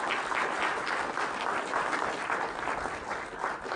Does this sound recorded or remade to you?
recorded